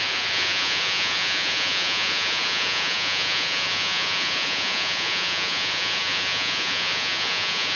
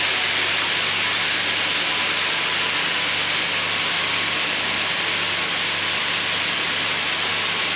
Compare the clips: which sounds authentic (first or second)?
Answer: second